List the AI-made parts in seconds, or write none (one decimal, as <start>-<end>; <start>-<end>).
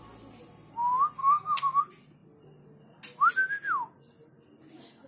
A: 1.2-1.8